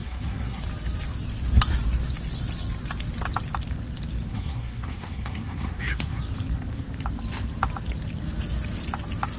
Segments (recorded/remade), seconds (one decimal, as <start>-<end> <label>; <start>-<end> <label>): 0.0-0.6 remade; 0.6-4.3 recorded; 4.3-6.2 remade; 6.2-9.4 recorded